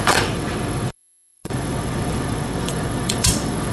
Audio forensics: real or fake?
fake